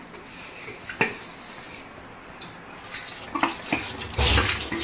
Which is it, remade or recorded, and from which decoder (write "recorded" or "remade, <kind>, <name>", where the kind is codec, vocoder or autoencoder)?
recorded